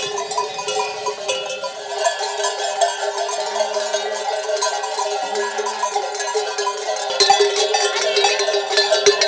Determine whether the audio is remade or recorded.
recorded